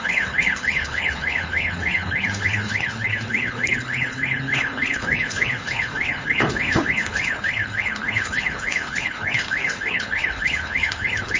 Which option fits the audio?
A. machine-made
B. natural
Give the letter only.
A